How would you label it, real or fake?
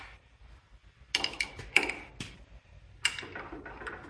real